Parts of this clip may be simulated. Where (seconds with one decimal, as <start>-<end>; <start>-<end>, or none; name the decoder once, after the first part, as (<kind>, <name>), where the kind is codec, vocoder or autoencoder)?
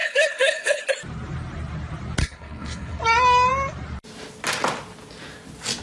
0.0-0.8 (codec, HILCodec); 2.2-3.0